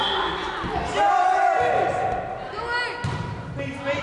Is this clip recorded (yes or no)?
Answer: yes